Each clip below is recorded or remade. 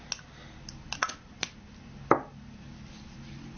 recorded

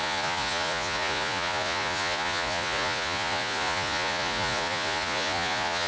remade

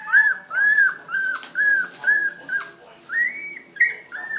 recorded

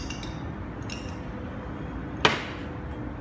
recorded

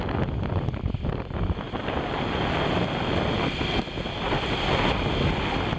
recorded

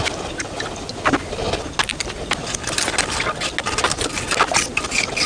recorded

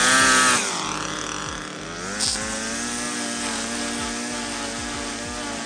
recorded